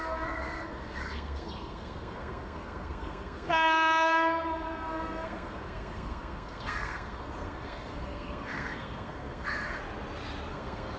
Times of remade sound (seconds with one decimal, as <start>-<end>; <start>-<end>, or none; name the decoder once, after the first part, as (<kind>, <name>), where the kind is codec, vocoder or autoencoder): 0.0-9.8 (codec, SNAC); 10.5-11.0